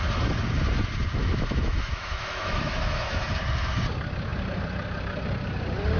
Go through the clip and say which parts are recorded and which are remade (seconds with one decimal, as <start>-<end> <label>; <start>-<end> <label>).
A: 0.0-1.2 recorded; 1.2-3.3 remade; 3.3-6.0 recorded